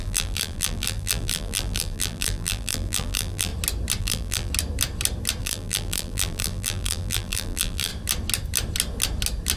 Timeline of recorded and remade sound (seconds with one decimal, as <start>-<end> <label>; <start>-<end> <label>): 0.0-3.5 remade; 3.5-4.0 recorded; 4.0-4.5 remade; 4.5-5.4 recorded; 5.4-7.9 remade; 7.9-9.6 recorded